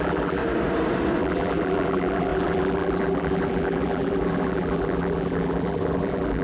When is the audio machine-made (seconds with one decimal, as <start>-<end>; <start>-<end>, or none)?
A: 0.0-0.4; 1.2-6.4